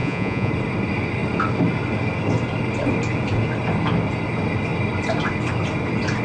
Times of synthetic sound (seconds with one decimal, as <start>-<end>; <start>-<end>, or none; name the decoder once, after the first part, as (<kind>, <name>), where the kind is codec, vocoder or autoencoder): 0.0-0.5 (vocoder, Vocos)